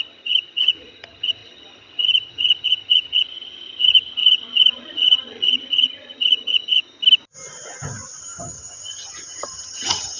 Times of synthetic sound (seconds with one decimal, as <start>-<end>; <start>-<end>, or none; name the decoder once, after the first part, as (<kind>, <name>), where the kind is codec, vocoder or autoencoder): 0.0-6.8 (vocoder, HiFi-GAN); 8.2-10.2